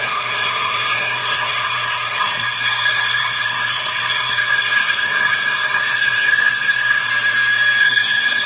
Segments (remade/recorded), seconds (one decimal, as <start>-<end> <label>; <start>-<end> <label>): 0.0-7.1 remade; 7.1-7.8 recorded; 7.8-8.5 remade